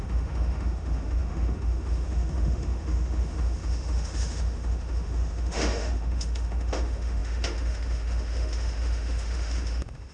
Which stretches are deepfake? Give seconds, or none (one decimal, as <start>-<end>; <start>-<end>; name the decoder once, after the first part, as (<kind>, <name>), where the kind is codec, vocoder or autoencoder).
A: 0.0-10.1 (autoencoder, DAC-VAE)